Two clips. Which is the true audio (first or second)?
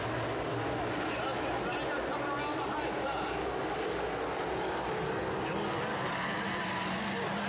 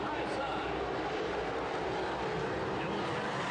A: first